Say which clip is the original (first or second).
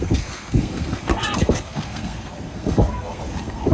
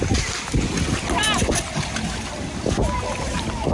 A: second